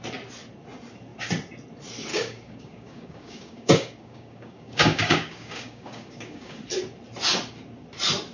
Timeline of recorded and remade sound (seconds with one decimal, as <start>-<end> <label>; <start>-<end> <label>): 0.0-2.1 recorded; 2.1-6.6 remade; 6.6-8.3 recorded